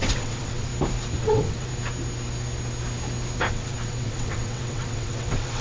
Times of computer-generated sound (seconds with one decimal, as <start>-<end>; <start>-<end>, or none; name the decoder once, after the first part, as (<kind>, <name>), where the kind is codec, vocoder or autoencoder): 0.0-0.7 (vocoder, WaveNeXt); 1.2-1.7; 3.5-5.6